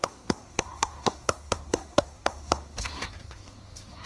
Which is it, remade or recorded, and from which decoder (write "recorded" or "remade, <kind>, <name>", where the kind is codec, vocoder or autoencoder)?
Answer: remade, codec, SNAC